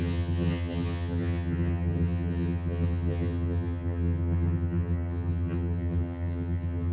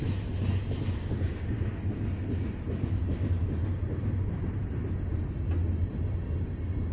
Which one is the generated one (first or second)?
first